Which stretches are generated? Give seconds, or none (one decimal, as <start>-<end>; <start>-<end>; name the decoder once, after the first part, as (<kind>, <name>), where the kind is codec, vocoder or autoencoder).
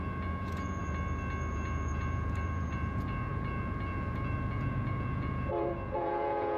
0.0-0.8 (vocoder, Vocos); 1.5-6.6